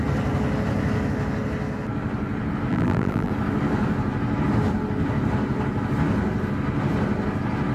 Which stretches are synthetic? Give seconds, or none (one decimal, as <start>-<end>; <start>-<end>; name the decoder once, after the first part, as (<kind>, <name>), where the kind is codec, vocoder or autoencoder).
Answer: 2.7-3.3 (vocoder, BigVGAN v2)

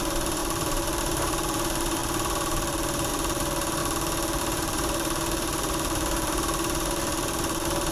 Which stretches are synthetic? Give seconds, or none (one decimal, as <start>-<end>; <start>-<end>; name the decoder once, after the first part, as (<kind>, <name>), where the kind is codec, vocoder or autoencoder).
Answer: 0.0-3.8 (vocoder, BigVGAN v2); 4.4-7.9

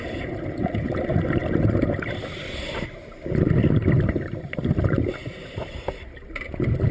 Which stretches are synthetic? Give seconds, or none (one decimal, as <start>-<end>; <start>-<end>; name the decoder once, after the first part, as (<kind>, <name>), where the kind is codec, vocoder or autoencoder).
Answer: none

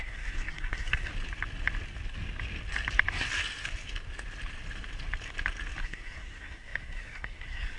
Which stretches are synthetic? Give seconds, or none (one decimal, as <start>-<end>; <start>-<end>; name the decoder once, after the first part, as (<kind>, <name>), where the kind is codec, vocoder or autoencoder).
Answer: 0.0-1.1 (codec, SNAC); 5.8-7.8

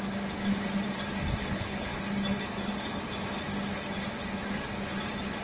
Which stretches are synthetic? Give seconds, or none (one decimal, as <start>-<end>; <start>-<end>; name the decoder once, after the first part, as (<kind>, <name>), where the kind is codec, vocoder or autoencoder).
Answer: 1.4-2.0 (codec, HILCodec)

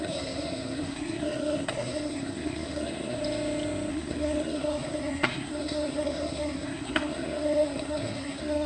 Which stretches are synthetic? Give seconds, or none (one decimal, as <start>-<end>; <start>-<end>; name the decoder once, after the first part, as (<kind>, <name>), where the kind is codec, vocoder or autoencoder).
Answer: 0.0-3.2 (codec, SNAC); 3.9-8.7